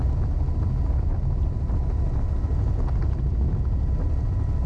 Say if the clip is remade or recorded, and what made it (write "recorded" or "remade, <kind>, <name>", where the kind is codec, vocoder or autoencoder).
recorded